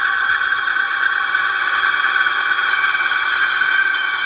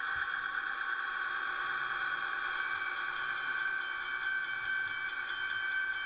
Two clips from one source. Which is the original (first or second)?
second